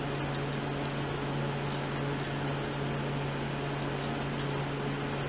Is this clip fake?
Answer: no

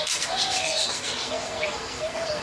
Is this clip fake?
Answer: yes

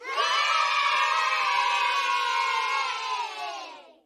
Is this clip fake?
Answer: no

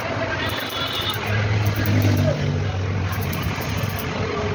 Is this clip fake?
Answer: no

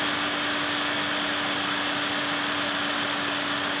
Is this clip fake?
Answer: no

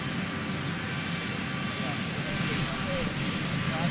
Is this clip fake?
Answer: no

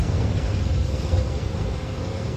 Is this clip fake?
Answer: yes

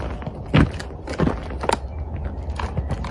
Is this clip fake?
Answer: no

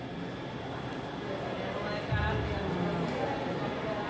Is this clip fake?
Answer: no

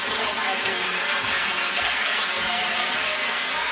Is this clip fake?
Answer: yes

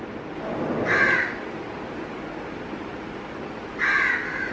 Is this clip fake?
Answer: no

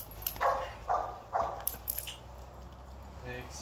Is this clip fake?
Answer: no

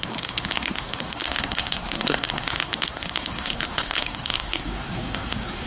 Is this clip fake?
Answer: yes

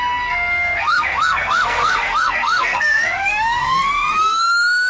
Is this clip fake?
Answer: yes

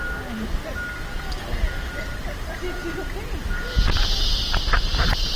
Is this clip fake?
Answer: no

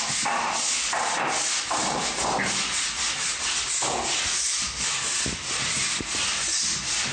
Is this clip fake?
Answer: no